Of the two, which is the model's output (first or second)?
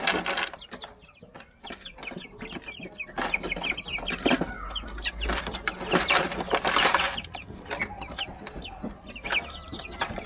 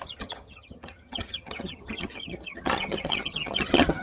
second